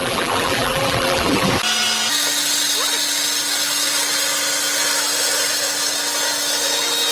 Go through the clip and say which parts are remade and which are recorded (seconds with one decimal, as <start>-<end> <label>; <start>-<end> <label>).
0.0-1.5 remade; 1.5-7.1 recorded